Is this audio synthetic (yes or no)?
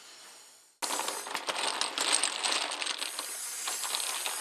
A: no